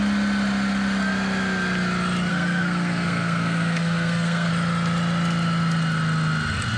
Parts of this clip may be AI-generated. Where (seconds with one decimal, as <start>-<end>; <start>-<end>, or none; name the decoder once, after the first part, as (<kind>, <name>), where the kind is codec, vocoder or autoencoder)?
2.3-4.5 (codec, SNAC)